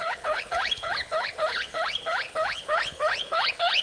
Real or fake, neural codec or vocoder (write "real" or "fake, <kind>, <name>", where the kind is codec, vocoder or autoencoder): fake, codec, HILCodec